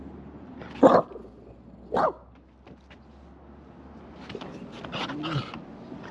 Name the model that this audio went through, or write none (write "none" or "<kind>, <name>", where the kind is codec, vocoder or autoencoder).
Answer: none